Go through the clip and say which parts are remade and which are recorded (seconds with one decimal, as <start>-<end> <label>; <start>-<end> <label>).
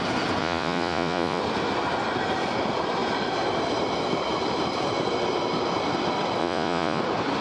0.0-0.4 recorded; 0.4-1.4 remade; 1.4-6.4 recorded; 6.4-7.0 remade; 7.0-7.4 recorded